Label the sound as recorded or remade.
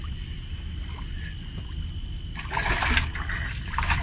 recorded